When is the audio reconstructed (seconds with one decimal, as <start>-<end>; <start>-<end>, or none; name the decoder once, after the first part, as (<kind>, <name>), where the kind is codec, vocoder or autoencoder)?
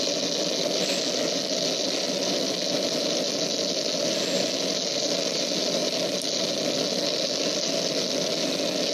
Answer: none